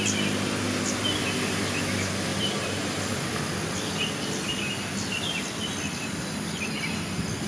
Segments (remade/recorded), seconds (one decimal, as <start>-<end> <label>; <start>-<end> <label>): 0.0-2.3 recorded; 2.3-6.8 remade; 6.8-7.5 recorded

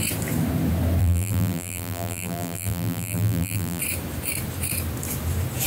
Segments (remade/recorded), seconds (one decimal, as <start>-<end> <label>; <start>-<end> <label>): 0.0-1.0 recorded; 1.0-3.8 remade; 3.8-5.7 recorded

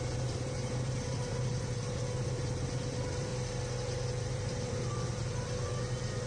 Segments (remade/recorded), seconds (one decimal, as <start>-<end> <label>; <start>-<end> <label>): 0.0-2.0 remade; 2.0-2.8 recorded; 2.8-3.3 remade; 3.3-4.1 recorded; 4.1-6.3 remade

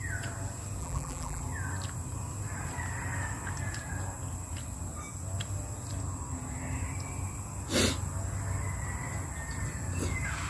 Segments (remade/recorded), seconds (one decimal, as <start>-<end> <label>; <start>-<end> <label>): 0.0-0.8 recorded; 0.8-1.4 remade; 1.4-10.5 recorded